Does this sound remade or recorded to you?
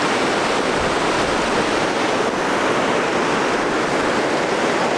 recorded